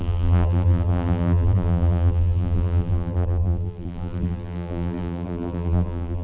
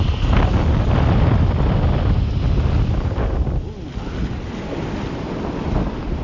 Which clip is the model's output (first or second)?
first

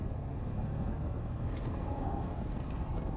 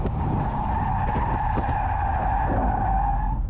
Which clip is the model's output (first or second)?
first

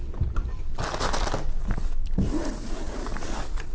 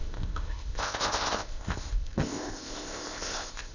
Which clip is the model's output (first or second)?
second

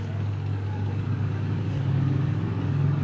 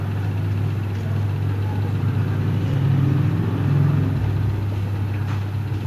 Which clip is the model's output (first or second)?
first